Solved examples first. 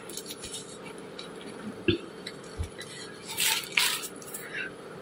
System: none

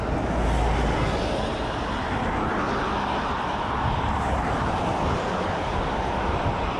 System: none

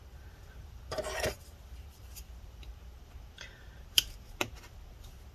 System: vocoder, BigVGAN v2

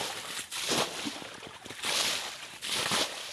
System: none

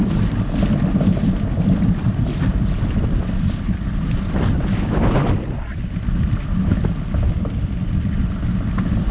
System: vocoder, BigVGAN v2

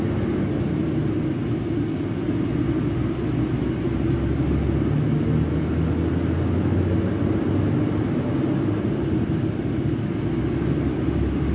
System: none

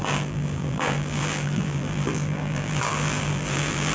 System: vocoder, BigVGAN v2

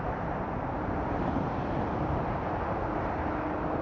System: none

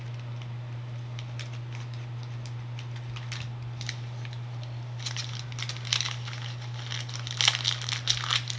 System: none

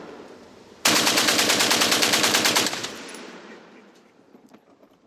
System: vocoder, BigVGAN v2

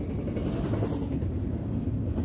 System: none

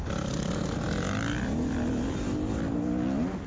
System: none